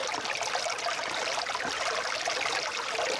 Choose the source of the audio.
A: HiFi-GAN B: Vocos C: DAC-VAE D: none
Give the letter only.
D